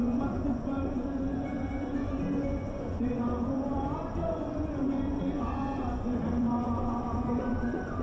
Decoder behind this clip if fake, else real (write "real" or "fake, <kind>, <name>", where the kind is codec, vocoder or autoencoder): fake, vocoder, Vocos